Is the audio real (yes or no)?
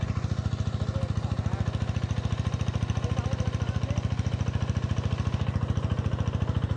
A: yes